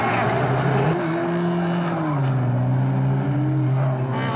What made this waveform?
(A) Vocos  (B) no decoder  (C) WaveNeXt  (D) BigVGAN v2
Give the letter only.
B